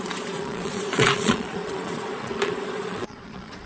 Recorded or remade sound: remade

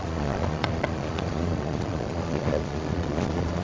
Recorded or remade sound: remade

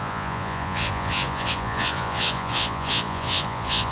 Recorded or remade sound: remade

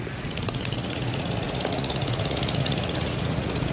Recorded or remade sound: remade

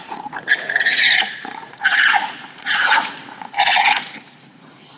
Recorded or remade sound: remade